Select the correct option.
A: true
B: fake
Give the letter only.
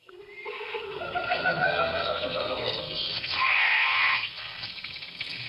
B